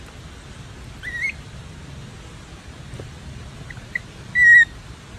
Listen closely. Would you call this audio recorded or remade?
recorded